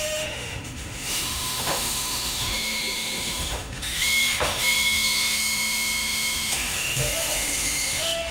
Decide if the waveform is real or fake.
fake